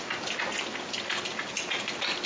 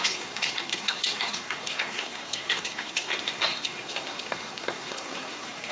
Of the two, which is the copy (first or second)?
second